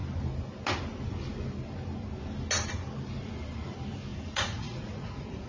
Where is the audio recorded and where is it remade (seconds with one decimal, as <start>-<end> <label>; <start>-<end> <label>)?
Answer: 0.0-4.1 recorded; 4.1-5.5 remade